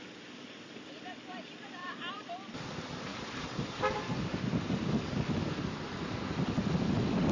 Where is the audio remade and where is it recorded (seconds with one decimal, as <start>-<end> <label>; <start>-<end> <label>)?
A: 0.0-1.8 recorded; 1.8-2.3 remade; 2.3-3.1 recorded; 3.1-4.9 remade; 4.9-7.3 recorded